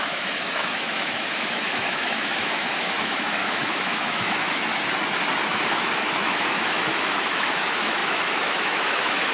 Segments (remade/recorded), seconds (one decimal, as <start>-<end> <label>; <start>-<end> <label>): 0.0-4.7 remade; 4.7-5.5 recorded; 5.5-9.3 remade